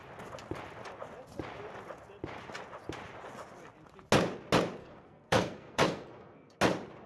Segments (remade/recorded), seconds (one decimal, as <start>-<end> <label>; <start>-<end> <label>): 0.0-4.8 recorded; 4.8-6.6 remade; 6.6-7.1 recorded